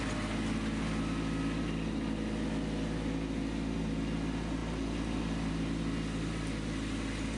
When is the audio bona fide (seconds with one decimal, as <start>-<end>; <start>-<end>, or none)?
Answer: 0.0-7.4